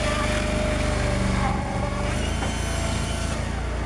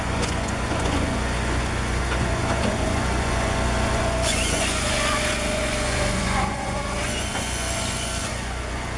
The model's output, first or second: second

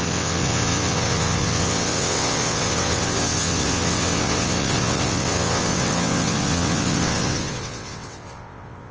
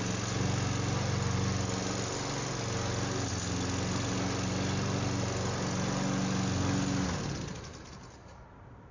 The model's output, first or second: first